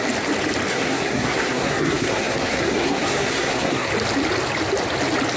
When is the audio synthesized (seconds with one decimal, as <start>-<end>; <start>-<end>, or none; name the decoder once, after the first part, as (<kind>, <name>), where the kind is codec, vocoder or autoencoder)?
0.7-3.9 (codec, SNAC)